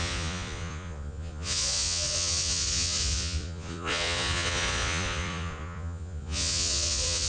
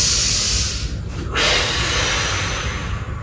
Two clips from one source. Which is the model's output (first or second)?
first